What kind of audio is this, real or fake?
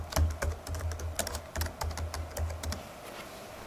real